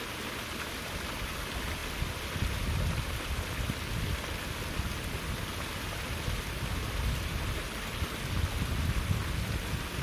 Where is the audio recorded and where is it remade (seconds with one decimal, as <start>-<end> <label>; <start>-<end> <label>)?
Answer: 0.0-10.0 recorded